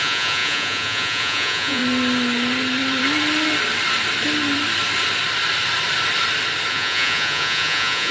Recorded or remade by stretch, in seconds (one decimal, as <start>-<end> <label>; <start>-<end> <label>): 0.0-1.8 remade; 1.8-6.7 recorded; 6.7-8.1 remade